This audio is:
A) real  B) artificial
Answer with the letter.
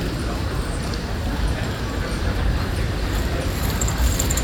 B